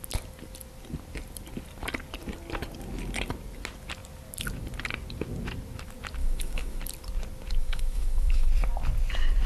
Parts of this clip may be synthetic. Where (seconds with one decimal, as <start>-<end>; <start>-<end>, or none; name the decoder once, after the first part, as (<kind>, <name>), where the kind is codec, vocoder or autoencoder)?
6.2-6.8 (autoencoder, DAC-VAE); 7.6-8.5